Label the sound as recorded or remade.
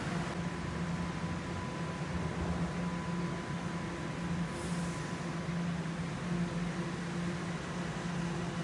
recorded